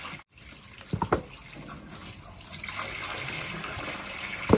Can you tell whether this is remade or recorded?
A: recorded